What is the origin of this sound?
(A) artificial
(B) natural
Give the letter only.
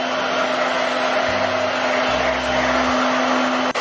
B